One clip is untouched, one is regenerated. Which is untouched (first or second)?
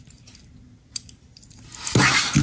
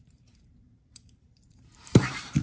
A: first